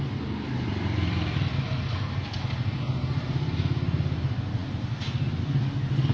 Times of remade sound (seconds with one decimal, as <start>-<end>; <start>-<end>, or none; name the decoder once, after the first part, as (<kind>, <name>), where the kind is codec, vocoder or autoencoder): none